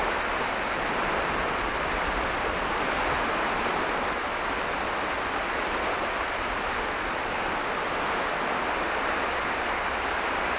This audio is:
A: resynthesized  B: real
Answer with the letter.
B